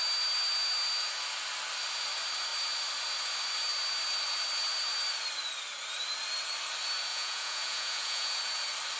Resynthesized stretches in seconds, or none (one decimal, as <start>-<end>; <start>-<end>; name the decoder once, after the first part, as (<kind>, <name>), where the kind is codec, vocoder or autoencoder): 7.1-8.4 (vocoder, Vocos)